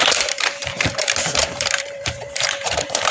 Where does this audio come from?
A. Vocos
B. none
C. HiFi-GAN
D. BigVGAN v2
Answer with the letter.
D